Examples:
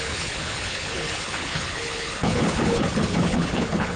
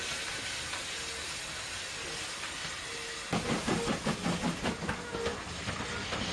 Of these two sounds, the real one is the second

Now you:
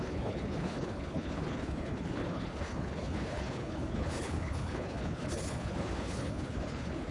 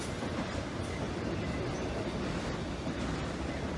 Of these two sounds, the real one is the second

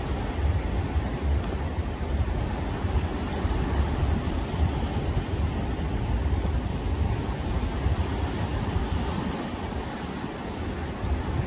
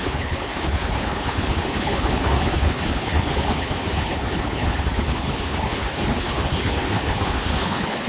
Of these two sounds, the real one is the first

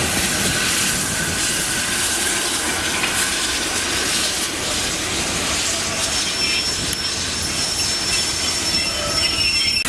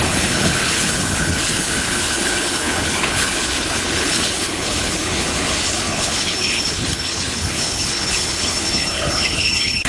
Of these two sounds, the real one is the first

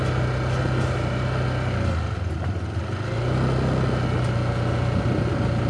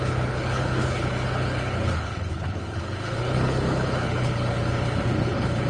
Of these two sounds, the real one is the first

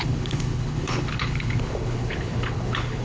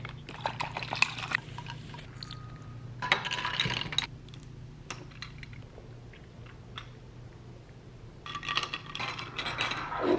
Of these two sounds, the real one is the second